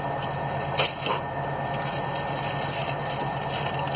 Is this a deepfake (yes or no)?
no